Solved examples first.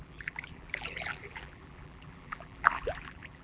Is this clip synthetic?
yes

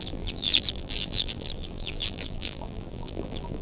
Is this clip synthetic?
yes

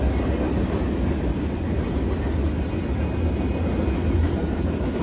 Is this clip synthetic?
no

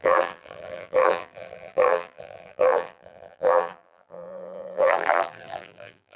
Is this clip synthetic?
yes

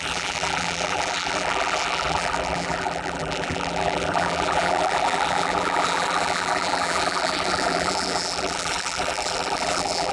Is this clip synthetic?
yes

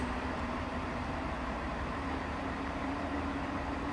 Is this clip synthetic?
yes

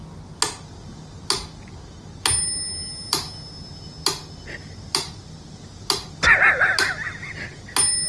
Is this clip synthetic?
no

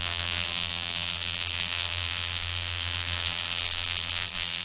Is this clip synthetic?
yes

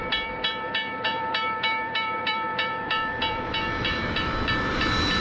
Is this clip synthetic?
yes